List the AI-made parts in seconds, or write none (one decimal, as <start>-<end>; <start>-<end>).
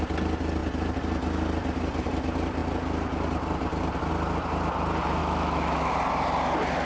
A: 5.2-5.9